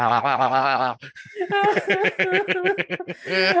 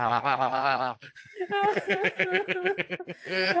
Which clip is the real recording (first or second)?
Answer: first